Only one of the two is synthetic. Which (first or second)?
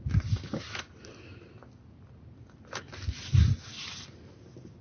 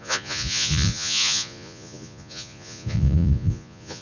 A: second